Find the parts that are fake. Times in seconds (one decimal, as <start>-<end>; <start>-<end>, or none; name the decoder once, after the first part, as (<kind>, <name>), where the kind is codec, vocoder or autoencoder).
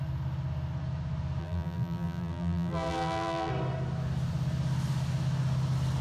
1.4-3.5 (vocoder, BigVGAN v2)